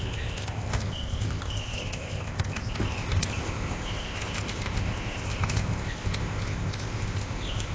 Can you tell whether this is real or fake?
fake